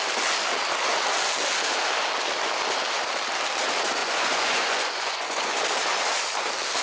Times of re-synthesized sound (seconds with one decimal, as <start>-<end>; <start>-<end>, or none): 4.0-5.6